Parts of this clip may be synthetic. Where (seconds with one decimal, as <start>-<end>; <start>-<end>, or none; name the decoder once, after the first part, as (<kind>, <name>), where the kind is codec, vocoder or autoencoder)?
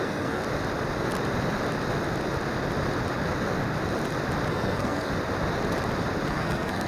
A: 0.0-0.4 (codec, SNAC); 4.5-5.1; 6.3-6.9